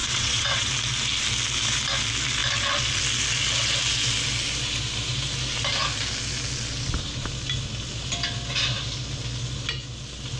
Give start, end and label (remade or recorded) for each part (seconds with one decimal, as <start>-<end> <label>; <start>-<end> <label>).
0.0-0.7 remade; 0.7-10.4 recorded